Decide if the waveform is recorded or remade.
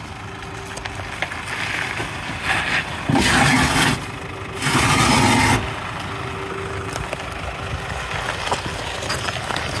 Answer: recorded